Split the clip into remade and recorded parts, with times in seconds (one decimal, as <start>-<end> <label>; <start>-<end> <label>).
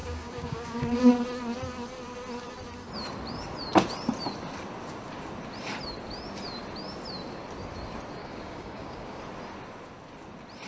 0.0-1.0 remade; 1.0-8.2 recorded; 8.2-9.2 remade; 9.2-10.7 recorded